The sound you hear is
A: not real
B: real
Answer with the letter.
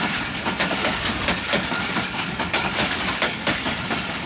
A